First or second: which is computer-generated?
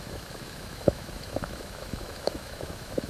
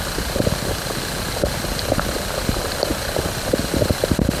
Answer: first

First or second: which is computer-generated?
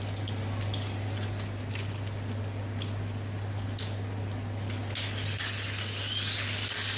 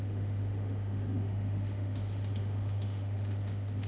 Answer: second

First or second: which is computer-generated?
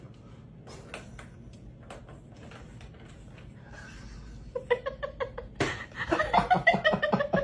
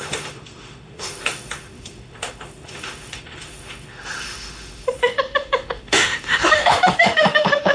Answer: second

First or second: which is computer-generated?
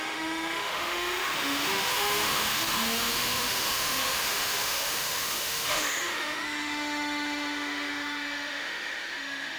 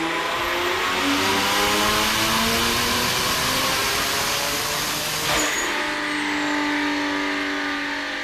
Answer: first